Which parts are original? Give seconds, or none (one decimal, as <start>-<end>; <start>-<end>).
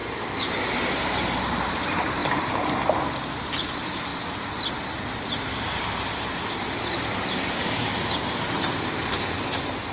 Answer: 0.0-1.0; 4.1-6.5